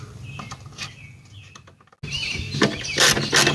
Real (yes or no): yes